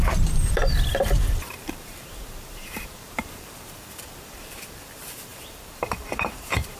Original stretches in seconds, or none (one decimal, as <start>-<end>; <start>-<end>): none